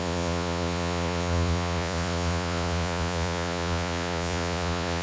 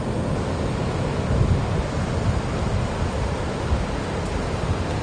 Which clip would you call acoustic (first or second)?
second